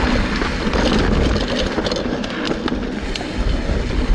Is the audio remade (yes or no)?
no